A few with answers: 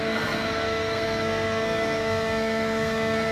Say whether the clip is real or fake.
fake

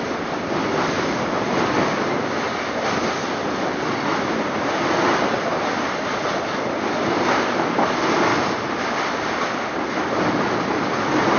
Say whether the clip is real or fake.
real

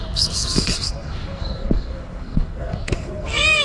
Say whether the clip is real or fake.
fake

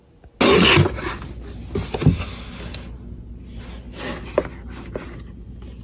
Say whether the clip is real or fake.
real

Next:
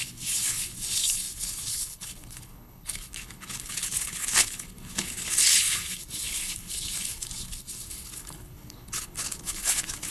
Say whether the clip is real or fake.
fake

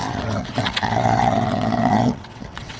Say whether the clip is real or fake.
fake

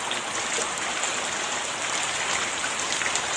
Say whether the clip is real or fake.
real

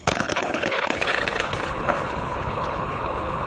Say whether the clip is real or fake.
fake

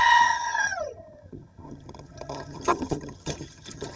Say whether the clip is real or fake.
fake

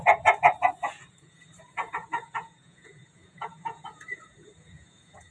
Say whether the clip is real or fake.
fake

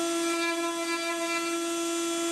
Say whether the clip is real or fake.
real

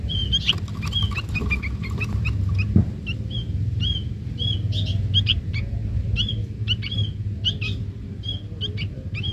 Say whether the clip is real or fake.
real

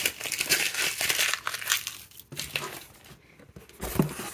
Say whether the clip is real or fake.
real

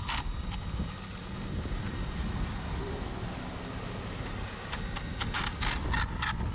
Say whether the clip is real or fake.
real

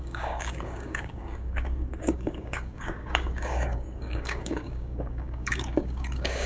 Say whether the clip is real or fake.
fake